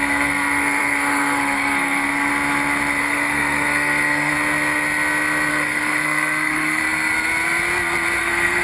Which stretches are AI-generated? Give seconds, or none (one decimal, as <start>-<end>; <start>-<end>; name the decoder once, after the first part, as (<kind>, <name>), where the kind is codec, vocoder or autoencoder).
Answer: 0.0-2.3 (codec, SNAC); 3.0-4.3; 5.5-6.8; 8.2-8.6